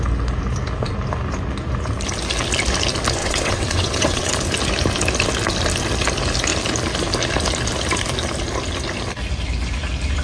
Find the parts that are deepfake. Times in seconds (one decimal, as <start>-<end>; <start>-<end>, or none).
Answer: 3.2-4.3